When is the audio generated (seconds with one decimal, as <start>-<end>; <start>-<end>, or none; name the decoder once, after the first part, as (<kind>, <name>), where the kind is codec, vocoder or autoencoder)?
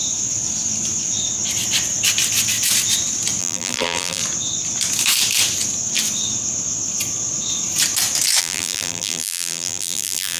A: 3.4-4.2 (vocoder, BigVGAN v2); 8.4-10.4